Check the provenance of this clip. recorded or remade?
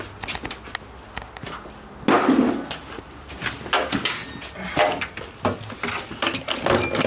recorded